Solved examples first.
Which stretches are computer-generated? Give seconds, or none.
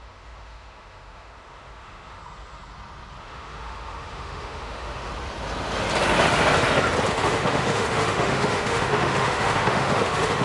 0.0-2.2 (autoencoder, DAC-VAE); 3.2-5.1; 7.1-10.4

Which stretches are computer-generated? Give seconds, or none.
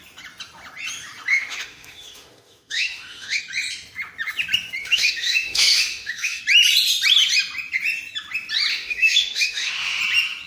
1.3-3.4 (autoencoder, DAC-VAE); 4.8-6.4; 8.7-10.0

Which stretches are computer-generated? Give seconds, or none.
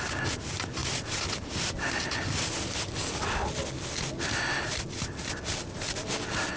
none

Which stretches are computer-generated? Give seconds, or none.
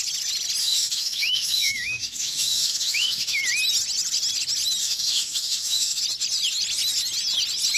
0.6-3.4 (autoencoder, DAC-VAE); 4.8-6.0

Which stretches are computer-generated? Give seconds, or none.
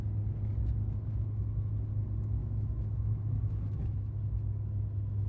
2.4-4.2 (autoencoder, DAC-VAE)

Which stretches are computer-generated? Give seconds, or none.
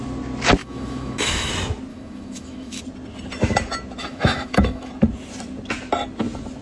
0.6-1.5 (autoencoder, DAC-VAE); 1.9-2.8; 4.0-4.9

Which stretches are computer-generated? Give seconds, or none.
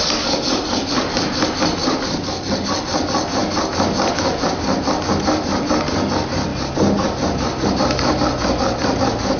none